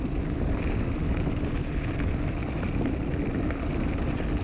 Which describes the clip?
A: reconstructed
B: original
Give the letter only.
B